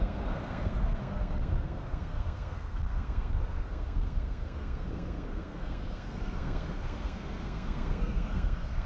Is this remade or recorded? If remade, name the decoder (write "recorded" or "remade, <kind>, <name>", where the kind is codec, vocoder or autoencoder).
remade, codec, SNAC